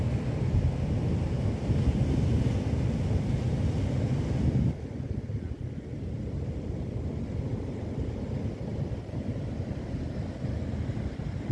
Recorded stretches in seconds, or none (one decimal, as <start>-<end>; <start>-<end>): 0.0-8.7; 9.5-11.5